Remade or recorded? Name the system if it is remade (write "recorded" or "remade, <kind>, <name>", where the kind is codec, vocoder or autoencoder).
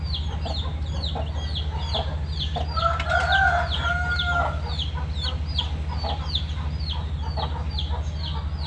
recorded